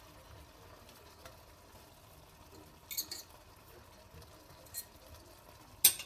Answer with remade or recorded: recorded